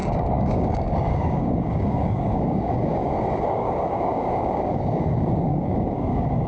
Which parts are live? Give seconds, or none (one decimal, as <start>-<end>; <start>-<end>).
none